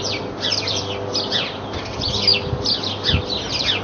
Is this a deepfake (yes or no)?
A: no